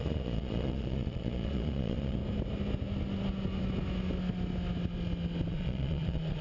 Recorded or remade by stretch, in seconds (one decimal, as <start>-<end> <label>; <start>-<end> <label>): 0.0-2.2 remade; 2.2-5.5 recorded; 5.5-6.4 remade